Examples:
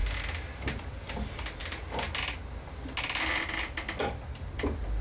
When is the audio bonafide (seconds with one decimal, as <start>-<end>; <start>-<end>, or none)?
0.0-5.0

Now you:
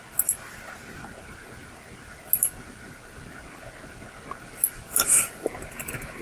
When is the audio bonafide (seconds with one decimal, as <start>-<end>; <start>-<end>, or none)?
0.0-6.2

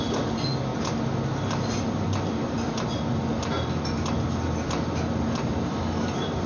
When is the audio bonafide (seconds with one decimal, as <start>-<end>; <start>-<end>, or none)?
0.0-6.5